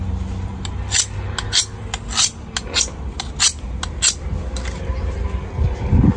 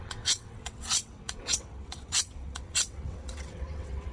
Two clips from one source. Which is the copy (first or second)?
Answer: second